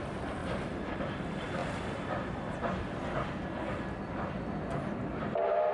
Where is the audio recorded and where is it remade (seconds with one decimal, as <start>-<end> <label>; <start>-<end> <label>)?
0.0-1.6 recorded; 1.6-2.4 remade; 2.4-5.7 recorded